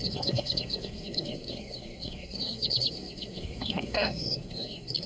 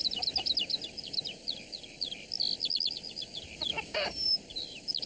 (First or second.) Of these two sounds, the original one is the second